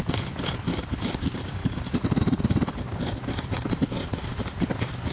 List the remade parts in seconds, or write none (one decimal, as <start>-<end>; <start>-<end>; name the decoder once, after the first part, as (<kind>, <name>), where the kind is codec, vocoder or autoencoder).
none